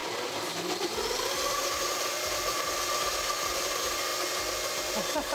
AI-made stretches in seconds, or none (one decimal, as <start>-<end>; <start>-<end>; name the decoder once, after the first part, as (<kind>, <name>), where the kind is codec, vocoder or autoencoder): 0.8-4.1 (vocoder, BigVGAN v2)